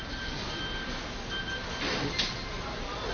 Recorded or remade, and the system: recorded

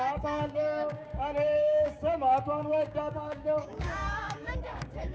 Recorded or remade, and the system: remade, codec, DAC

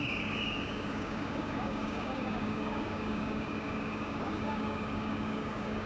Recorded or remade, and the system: remade, codec, DAC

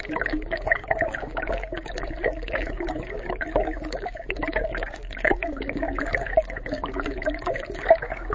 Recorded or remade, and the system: remade, codec, DAC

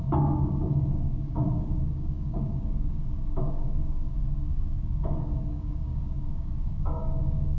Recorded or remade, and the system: remade, codec, DAC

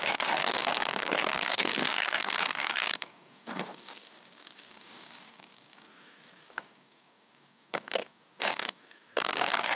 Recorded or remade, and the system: remade, codec, DAC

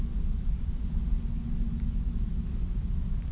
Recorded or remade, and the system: recorded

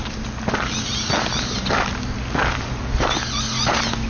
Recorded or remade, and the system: recorded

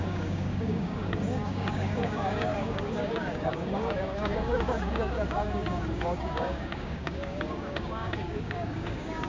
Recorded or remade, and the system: remade, codec, DAC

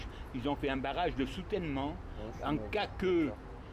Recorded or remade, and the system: recorded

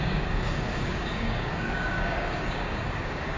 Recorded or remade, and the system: remade, codec, DAC